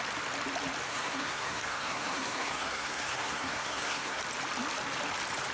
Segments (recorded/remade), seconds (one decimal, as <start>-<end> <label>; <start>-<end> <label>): 0.0-0.9 recorded; 0.9-4.2 remade; 4.2-5.5 recorded